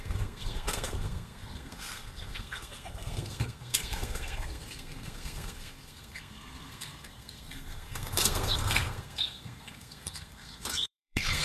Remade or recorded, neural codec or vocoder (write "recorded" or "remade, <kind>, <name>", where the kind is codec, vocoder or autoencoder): remade, codec, SNAC